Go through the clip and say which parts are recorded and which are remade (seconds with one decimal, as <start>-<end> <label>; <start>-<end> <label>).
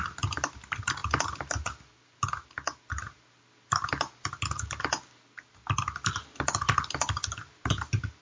0.0-8.2 recorded